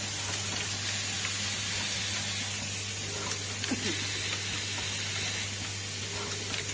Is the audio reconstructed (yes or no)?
no